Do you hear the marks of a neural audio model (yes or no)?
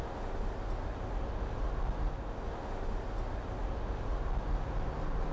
no